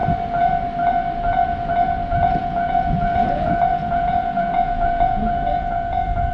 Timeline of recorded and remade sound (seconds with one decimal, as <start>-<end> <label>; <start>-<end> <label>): 0.0-2.1 recorded; 2.1-6.3 remade